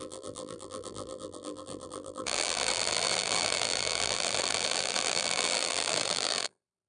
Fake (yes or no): yes